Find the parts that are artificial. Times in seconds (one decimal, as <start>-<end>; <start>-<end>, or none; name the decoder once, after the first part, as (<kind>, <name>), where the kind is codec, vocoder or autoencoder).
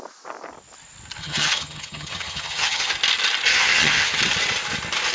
1.2-2.9 (vocoder, HiFi-GAN); 3.5-4.2